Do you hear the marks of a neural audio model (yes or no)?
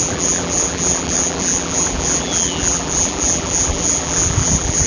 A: yes